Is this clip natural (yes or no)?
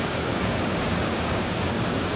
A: no